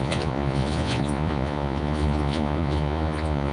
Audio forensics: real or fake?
fake